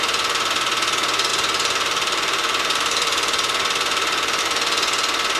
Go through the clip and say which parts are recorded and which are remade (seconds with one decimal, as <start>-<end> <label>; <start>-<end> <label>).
0.0-1.3 recorded; 1.3-4.4 remade; 4.4-5.4 recorded